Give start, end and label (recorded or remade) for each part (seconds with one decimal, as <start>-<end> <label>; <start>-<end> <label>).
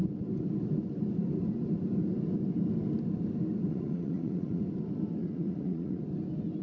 0.0-3.7 recorded; 3.7-4.6 remade; 4.6-5.2 recorded; 5.2-6.0 remade; 6.0-6.6 recorded